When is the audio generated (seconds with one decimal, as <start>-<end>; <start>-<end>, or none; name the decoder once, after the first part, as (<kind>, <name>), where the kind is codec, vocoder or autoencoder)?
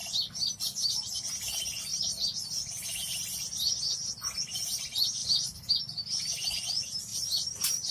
0.0-1.3 (vocoder, BigVGAN v2); 1.9-3.8; 5.2-5.7; 7.1-7.9